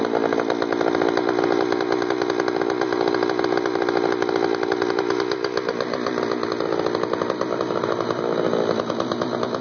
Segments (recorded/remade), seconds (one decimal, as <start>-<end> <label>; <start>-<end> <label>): 0.0-9.6 recorded